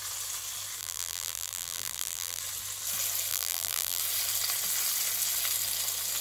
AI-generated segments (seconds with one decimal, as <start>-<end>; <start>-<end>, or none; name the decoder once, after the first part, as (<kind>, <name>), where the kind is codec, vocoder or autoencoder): 0.8-2.4 (vocoder, BigVGAN v2); 3.3-4.0